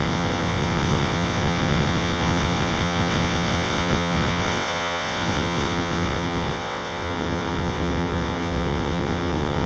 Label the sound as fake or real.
fake